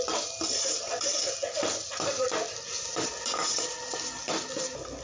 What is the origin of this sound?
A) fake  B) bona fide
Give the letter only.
B